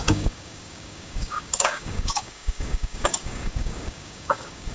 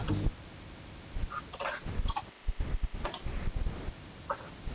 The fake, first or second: first